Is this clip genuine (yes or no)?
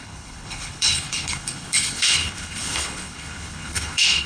no